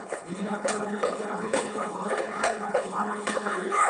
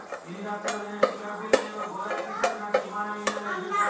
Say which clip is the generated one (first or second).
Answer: first